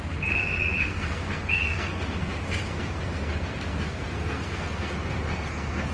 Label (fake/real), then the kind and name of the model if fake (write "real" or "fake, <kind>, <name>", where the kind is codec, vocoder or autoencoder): fake, codec, SNAC